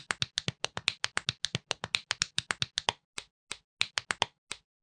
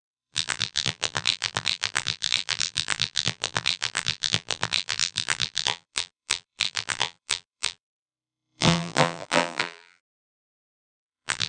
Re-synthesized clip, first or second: second